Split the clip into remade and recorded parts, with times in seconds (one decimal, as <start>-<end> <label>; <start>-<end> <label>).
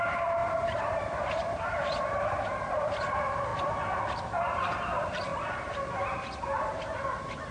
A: 0.0-3.5 remade; 3.5-4.2 recorded; 4.2-7.5 remade